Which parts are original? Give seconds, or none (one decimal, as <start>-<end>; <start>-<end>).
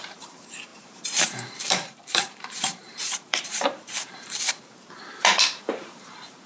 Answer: none